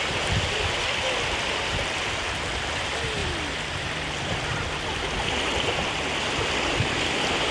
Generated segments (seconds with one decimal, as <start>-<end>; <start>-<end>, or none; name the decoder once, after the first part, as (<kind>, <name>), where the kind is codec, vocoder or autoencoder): 3.2-5.1 (vocoder, BigVGAN v2)